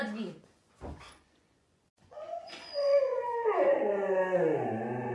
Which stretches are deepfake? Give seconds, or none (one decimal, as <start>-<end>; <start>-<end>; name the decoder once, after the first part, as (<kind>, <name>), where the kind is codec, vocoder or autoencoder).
0.0-3.7 (vocoder, Vocos)